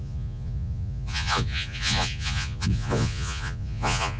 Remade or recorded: remade